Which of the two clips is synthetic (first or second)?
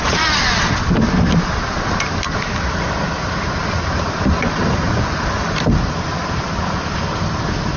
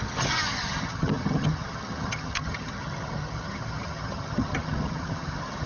second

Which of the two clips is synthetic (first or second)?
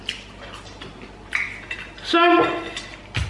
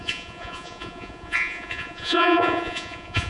second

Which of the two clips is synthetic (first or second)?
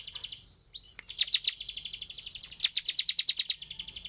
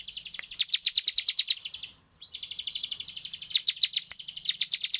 second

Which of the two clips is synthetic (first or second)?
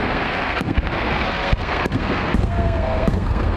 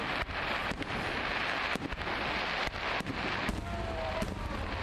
first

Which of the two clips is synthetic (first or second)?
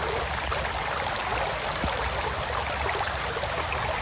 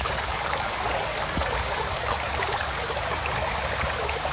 second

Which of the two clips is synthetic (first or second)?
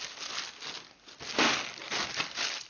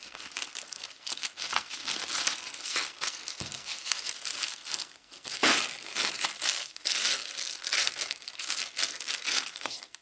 second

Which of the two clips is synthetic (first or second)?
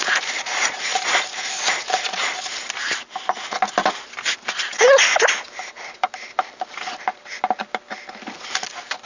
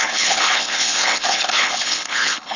second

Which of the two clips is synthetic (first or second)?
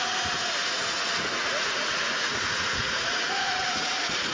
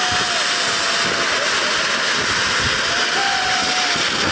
first